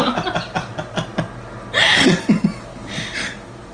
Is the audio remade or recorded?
recorded